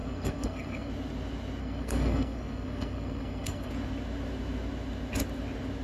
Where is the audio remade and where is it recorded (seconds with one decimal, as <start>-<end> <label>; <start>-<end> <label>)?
0.0-0.9 remade; 0.9-1.6 recorded; 1.6-3.7 remade; 3.7-5.8 recorded